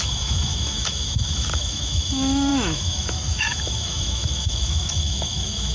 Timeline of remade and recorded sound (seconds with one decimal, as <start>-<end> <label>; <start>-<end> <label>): 0.0-5.7 remade